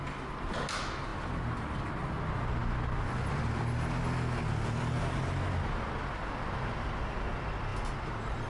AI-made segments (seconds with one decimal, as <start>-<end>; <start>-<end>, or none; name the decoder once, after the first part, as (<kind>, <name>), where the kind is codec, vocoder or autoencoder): 7.7-8.5 (vocoder, BigVGAN v2)